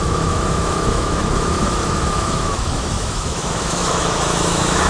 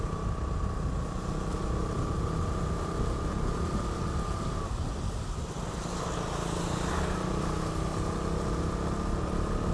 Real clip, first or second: second